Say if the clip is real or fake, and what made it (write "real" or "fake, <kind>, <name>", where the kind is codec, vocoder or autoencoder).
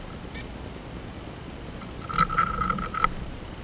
real